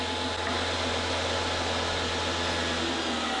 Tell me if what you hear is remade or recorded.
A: recorded